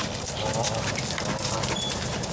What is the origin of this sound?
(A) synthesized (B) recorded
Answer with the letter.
B